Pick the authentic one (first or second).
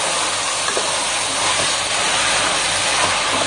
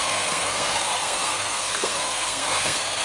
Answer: first